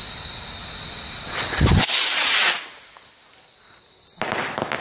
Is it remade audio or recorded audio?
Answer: recorded